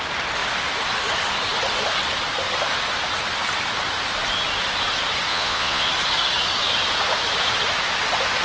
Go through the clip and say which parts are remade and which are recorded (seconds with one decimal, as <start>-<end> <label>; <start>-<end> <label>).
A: 0.0-5.3 recorded; 5.3-5.9 remade; 5.9-8.4 recorded